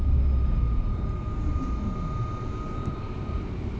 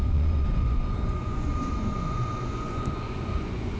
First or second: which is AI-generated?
second